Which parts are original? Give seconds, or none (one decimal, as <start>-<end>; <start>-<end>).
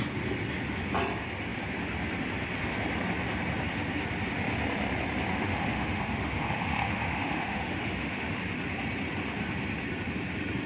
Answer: 0.0-5.3; 8.4-10.7